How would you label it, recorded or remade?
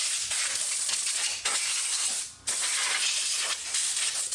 recorded